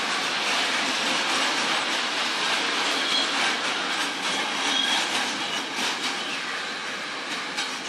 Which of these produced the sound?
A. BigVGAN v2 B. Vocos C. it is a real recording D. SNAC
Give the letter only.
C